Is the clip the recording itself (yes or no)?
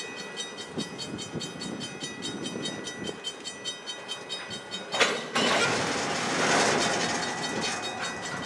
yes